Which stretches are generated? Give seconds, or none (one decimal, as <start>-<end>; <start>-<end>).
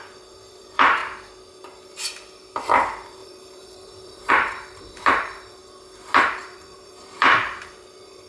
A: 0.0-1.0; 2.6-5.6; 6.2-8.3